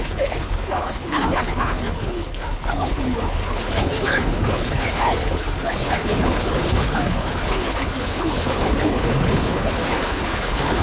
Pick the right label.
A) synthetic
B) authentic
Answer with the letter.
A